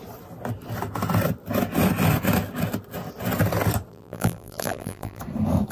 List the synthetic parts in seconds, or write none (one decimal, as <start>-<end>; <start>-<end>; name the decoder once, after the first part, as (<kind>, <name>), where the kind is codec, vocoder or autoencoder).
3.9-5.2 (vocoder, BigVGAN v2)